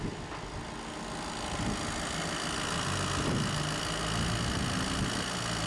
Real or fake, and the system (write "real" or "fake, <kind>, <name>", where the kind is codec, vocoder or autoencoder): real